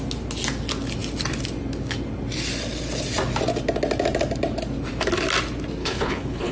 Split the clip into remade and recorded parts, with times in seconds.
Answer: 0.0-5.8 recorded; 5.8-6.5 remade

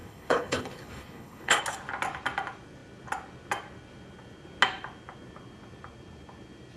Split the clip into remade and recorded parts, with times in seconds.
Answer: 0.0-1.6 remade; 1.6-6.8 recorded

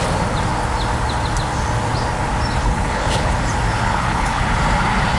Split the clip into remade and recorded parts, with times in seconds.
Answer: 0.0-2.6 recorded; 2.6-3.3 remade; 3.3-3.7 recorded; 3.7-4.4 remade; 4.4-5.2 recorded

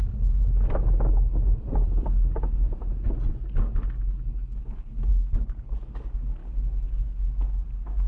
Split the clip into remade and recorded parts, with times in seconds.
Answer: 0.0-4.6 recorded; 4.6-5.7 remade; 5.7-6.4 recorded; 6.4-7.2 remade; 7.2-8.1 recorded